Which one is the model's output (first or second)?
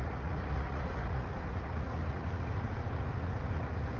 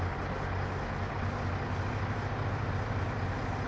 first